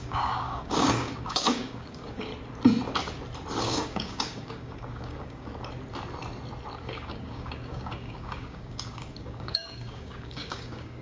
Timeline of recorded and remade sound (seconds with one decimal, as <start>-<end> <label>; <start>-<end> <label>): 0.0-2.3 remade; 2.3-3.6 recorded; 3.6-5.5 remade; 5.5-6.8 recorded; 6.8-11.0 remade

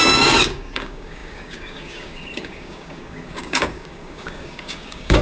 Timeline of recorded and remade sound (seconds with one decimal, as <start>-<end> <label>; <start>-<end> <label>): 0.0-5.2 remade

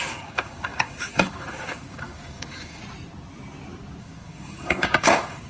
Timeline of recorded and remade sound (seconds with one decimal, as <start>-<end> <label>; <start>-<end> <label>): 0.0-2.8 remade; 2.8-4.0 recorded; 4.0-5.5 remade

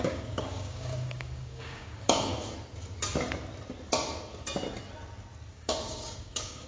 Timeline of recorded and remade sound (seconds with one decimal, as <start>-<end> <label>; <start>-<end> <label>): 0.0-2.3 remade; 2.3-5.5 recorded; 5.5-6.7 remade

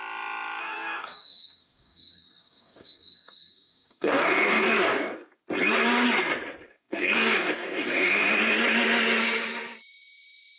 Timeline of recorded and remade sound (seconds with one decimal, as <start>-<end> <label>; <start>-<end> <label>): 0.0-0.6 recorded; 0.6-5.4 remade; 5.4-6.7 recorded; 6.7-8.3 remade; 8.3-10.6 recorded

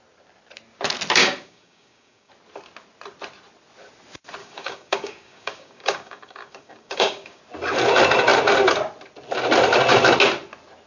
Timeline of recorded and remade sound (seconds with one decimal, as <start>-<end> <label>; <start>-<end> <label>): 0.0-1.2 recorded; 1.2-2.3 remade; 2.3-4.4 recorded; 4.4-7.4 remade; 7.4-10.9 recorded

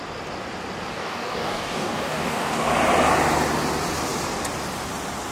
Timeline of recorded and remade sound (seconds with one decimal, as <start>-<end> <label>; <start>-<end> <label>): 0.0-0.9 recorded; 0.9-2.7 remade; 2.7-5.3 recorded